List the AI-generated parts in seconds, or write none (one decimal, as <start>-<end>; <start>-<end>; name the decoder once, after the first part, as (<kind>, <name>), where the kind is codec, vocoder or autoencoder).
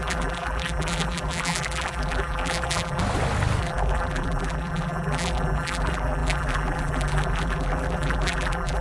0.0-3.0 (vocoder, BigVGAN v2); 3.6-8.8